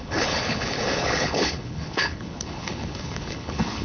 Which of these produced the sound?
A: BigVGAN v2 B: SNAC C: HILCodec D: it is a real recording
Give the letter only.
C